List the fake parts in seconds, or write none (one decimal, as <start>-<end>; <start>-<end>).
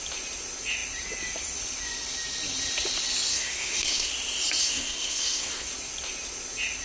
3.3-4.1; 4.6-5.7